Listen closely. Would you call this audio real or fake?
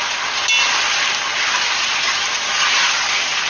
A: real